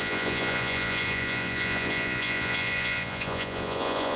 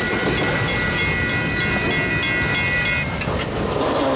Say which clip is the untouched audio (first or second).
second